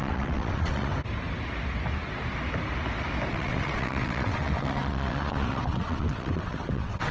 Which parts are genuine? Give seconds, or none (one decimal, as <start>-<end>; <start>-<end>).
0.9-3.3